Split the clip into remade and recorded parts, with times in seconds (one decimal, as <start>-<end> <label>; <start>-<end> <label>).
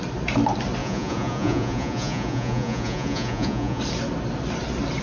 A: 0.0-0.8 recorded; 0.8-3.8 remade; 3.8-5.0 recorded